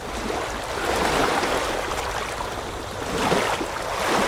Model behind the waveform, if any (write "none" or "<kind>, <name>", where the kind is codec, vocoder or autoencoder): none